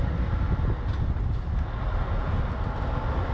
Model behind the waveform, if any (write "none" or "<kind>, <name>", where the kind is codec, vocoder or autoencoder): none